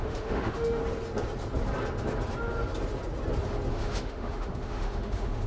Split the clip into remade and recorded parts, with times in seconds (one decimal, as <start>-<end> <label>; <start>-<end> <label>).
0.0-0.8 remade; 0.8-3.7 recorded; 3.7-5.5 remade